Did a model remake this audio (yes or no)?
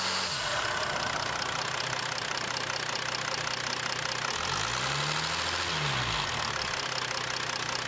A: no